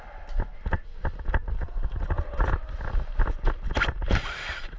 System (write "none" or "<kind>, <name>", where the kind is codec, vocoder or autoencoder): none